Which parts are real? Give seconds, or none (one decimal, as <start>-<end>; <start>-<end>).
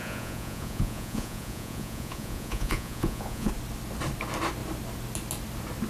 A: 3.5-5.9